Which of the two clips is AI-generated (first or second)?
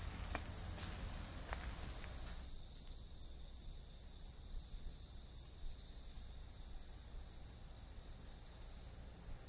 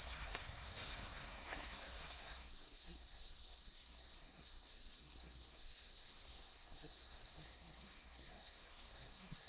second